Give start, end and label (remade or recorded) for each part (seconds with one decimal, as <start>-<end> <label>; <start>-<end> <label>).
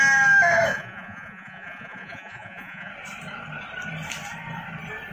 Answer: 0.0-0.7 recorded; 0.7-2.9 remade; 2.9-5.1 recorded